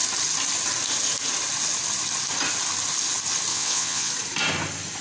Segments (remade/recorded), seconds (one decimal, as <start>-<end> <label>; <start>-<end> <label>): 0.0-3.5 recorded; 3.5-4.1 remade; 4.1-5.0 recorded